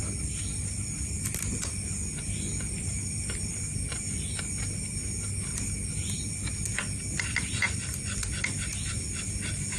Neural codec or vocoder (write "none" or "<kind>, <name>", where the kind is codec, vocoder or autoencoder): none